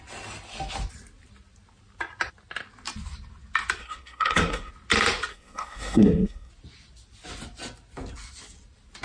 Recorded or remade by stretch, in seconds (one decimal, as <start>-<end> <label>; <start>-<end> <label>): 0.0-3.8 recorded; 3.8-4.7 remade; 4.7-5.3 recorded; 5.3-6.5 remade; 6.5-9.0 recorded